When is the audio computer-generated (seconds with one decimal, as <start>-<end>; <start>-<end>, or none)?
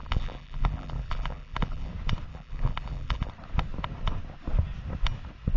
0.0-1.9; 2.3-3.3